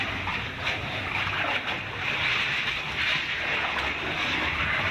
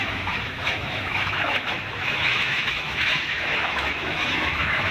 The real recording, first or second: first